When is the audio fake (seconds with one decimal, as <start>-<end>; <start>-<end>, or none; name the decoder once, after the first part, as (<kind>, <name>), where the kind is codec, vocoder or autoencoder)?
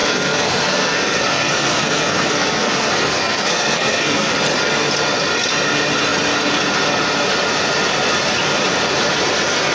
0.0-4.3 (codec, SNAC)